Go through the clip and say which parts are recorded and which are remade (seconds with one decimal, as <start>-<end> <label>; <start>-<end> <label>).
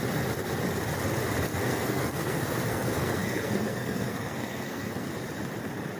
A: 0.0-1.5 recorded; 1.5-5.1 remade; 5.1-6.0 recorded